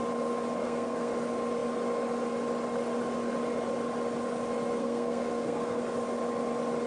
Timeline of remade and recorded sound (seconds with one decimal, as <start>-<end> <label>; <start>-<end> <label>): 0.0-0.6 recorded; 0.6-1.1 remade; 1.1-4.8 recorded; 4.8-5.8 remade; 5.8-6.9 recorded